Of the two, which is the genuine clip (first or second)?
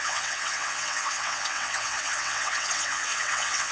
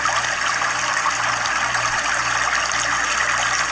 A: second